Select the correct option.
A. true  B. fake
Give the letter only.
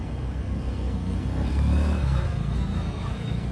B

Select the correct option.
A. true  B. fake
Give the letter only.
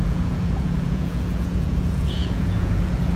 B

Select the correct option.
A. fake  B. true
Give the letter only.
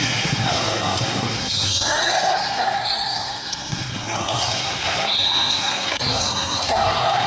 A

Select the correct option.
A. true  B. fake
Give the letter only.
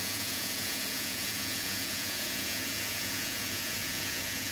B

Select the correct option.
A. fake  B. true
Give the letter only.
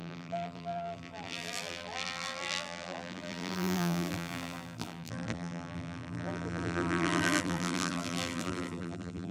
A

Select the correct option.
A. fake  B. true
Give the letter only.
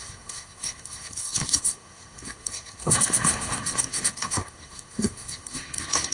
A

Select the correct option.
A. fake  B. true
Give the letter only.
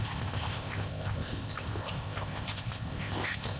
A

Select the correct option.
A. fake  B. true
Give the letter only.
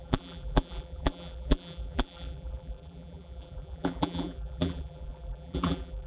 A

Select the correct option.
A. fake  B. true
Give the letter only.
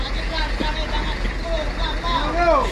B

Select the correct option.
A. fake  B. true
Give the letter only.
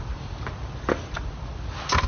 B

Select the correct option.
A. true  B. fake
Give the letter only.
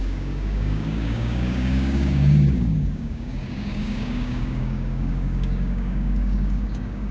B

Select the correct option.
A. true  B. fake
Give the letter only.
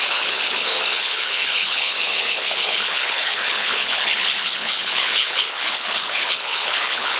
B